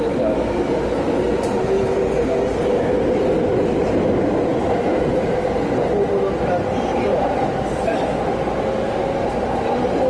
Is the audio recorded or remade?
recorded